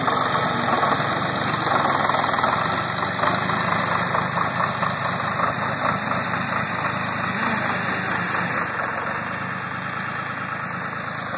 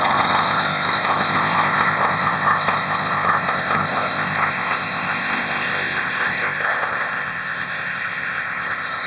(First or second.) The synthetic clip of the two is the second